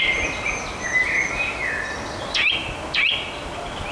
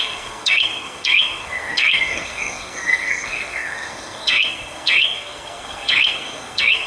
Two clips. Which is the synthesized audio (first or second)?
second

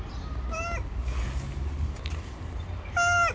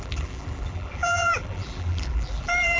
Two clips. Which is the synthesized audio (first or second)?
second